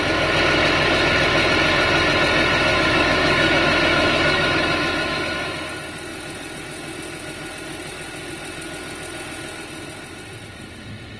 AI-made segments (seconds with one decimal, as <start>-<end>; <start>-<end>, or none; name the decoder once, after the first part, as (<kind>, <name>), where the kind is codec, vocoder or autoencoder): 2.7-5.6 (autoencoder, DAC-VAE)